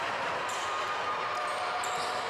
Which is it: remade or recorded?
remade